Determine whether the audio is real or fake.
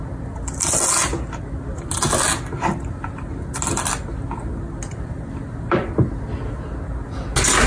real